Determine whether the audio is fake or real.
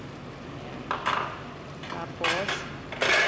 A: real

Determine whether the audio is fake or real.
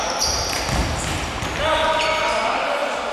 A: real